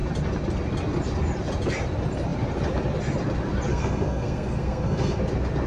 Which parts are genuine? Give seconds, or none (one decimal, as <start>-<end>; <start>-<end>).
0.0-3.7; 5.2-5.7

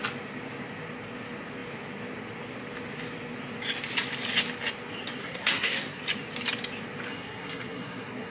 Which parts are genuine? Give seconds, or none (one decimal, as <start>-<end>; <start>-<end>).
0.0-5.2; 6.0-7.1

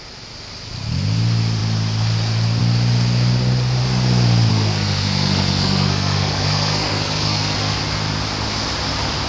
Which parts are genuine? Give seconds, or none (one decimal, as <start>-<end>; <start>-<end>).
0.0-4.5; 7.8-9.3

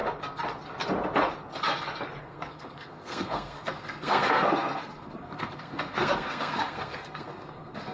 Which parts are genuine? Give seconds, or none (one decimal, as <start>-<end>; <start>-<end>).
0.0-2.2

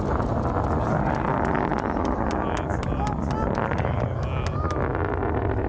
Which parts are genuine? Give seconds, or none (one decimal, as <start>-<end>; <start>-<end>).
0.0-5.7